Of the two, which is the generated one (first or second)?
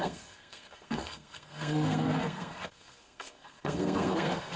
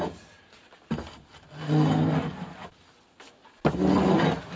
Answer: first